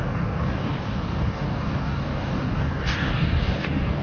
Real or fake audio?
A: fake